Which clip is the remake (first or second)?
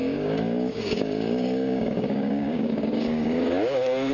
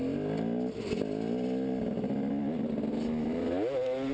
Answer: first